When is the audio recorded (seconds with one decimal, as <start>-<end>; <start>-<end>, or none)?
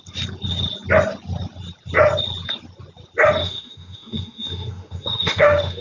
0.0-3.4